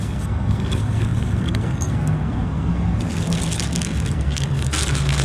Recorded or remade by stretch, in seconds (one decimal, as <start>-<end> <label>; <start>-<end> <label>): 0.0-5.2 remade